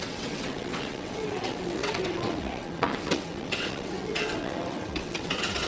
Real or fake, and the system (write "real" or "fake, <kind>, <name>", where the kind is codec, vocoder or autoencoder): fake, vocoder, WaveNeXt